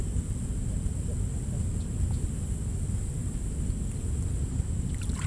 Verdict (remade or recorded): recorded